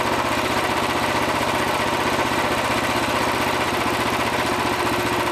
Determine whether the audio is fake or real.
real